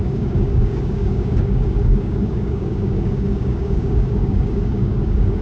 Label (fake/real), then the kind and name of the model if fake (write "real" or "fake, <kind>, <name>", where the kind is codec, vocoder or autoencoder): fake, codec, DAC